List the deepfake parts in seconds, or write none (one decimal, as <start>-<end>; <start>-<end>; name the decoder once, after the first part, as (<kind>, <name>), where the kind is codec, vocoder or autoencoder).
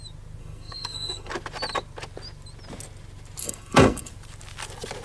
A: 0.4-1.3 (codec, SNAC); 3.4-4.1